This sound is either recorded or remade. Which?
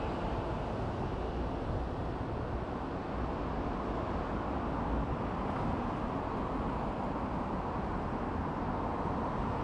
recorded